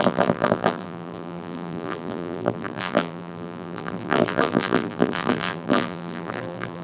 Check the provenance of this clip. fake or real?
fake